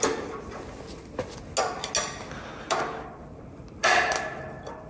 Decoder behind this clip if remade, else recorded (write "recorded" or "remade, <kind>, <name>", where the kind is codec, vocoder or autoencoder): recorded